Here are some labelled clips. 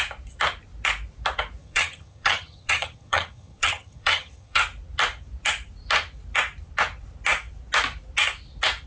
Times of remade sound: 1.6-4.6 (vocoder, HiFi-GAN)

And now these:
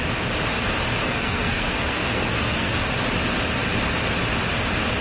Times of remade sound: 1.0-2.7 (codec, SNAC)

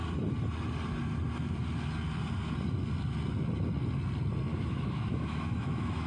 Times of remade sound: 4.5-6.1 (autoencoder, DAC-VAE)